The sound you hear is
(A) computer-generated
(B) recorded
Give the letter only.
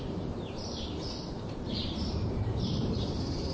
A